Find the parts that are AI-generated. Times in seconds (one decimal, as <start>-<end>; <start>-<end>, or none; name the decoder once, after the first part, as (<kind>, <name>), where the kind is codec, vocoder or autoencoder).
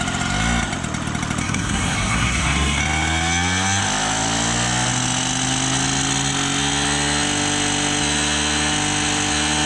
1.4-2.8 (codec, SNAC)